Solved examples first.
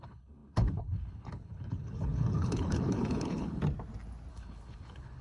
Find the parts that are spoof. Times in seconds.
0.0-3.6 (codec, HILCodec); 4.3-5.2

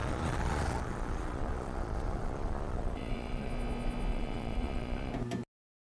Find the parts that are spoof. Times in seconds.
0.0-3.5 (vocoder, Vocos); 4.1-5.1

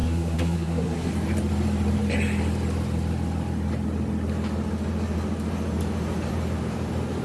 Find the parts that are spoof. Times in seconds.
0.0-1.1 (codec, SNAC)

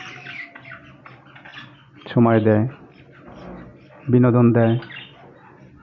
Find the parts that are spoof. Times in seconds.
none

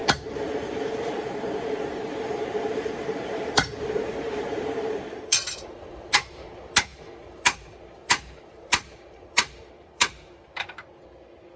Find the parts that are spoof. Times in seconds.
0.0-11.6 (vocoder, BigVGAN v2)

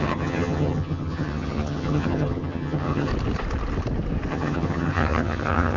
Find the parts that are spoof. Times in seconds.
0.0-3.1 (vocoder, HiFi-GAN); 4.3-5.8